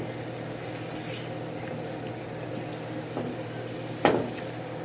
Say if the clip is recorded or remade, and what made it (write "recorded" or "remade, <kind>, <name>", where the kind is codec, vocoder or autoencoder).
recorded